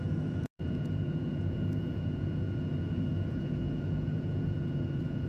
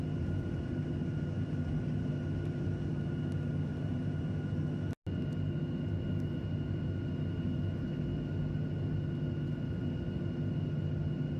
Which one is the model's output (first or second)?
first